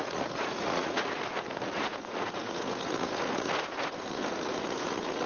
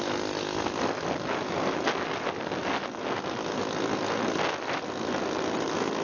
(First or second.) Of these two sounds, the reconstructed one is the first